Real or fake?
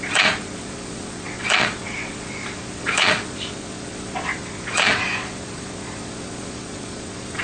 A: fake